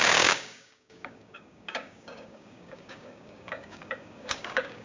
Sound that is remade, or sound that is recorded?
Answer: remade